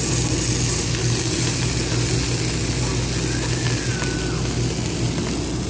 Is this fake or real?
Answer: real